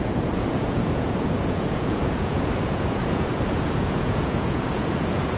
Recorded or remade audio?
remade